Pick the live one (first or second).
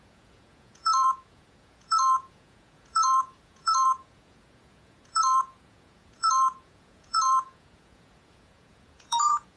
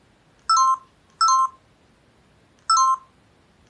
second